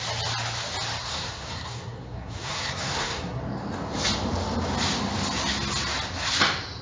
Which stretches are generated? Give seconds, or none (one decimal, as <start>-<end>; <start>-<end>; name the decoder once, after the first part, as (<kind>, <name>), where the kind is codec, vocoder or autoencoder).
1.0-3.4 (codec, SNAC)